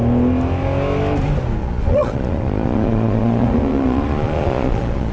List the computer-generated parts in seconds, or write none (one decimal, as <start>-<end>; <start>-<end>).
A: 1.6-5.1